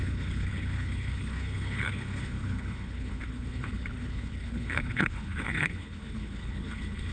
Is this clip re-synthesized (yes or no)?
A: yes